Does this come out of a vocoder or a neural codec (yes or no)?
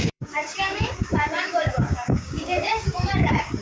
yes